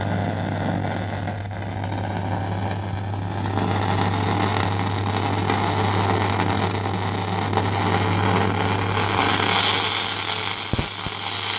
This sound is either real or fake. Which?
real